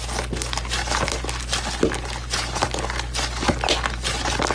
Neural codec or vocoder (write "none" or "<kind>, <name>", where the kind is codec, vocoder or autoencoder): none